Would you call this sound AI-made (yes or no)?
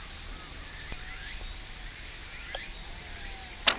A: no